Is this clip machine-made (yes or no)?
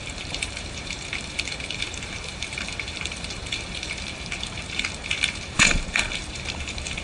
yes